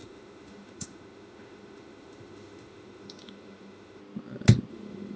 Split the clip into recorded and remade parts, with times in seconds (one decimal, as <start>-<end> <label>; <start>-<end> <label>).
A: 0.0-4.0 remade; 4.0-4.7 recorded; 4.7-5.2 remade